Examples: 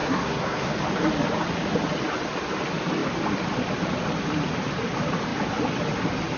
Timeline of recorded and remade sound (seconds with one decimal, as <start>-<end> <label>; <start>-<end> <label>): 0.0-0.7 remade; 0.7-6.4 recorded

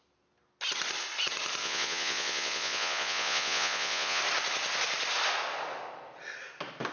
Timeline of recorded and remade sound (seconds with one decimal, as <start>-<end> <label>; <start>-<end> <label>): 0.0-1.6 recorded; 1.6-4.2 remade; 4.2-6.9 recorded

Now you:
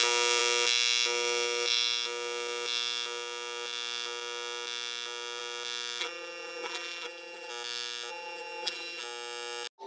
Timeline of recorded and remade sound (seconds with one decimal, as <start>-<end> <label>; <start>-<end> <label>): 0.0-6.0 recorded; 6.0-7.5 remade; 7.5-8.1 recorded; 8.1-9.0 remade; 9.0-9.9 recorded

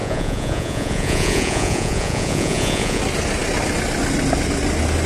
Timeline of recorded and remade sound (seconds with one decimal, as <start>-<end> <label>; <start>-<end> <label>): 0.0-3.0 remade; 3.0-5.1 recorded

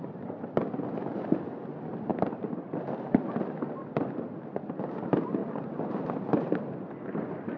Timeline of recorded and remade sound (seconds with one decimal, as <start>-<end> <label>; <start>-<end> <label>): 0.0-2.1 remade; 2.1-2.7 recorded; 2.7-7.6 remade

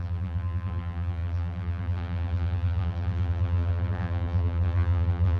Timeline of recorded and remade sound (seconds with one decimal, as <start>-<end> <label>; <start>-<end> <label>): 0.0-5.4 remade